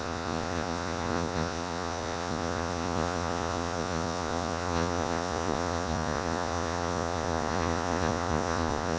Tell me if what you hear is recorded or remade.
remade